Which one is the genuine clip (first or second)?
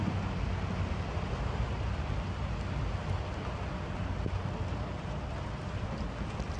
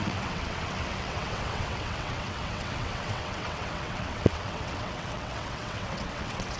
first